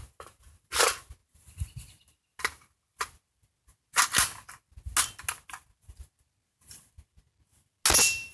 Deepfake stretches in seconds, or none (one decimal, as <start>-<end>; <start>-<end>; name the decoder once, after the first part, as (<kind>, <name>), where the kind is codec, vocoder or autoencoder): none